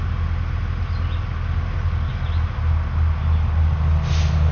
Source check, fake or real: real